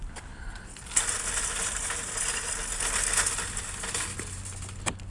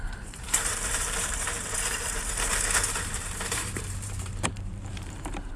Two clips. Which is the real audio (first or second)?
first